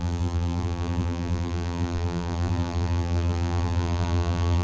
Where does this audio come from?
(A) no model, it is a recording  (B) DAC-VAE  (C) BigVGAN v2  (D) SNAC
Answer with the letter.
C